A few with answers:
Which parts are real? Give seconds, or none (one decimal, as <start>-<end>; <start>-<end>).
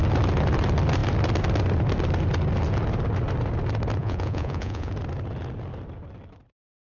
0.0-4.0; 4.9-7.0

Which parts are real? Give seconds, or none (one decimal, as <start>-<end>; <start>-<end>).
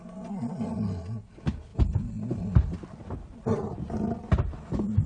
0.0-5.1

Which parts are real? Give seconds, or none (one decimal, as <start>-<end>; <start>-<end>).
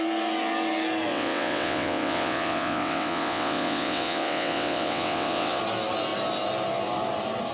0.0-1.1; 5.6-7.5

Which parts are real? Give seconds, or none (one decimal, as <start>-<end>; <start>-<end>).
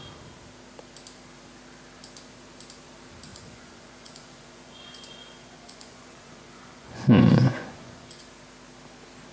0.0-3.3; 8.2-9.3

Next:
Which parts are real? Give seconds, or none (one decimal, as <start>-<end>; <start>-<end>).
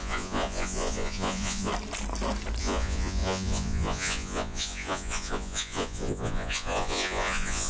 1.7-2.6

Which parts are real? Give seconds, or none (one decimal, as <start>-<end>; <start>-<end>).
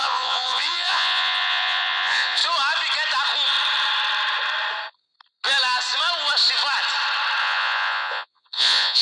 2.4-7.4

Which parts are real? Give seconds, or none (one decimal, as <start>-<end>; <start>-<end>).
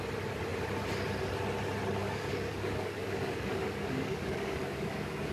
0.0-2.0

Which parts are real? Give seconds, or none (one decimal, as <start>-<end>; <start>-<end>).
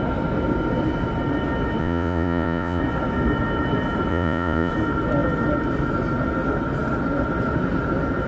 0.0-1.8; 2.8-4.1; 4.7-8.3